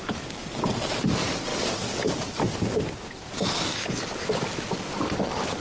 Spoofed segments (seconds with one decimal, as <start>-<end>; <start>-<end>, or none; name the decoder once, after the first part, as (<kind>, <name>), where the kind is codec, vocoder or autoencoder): 0.0-0.4 (vocoder, BigVGAN v2); 0.9-1.5; 4.9-5.6